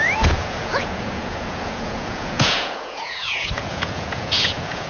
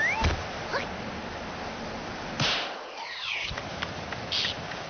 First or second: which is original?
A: second